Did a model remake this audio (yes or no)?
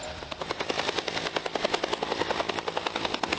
no